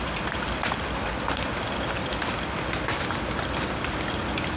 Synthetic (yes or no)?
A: no